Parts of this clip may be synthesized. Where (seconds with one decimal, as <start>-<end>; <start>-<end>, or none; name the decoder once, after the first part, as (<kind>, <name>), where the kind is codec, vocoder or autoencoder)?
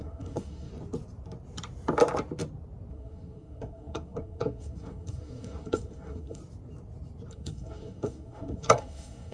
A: 0.0-0.7 (codec, SNAC); 2.9-6.4; 7.3-9.3